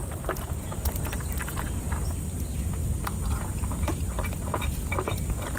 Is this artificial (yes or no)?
yes